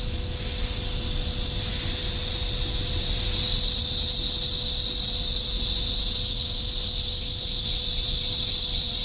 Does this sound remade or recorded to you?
recorded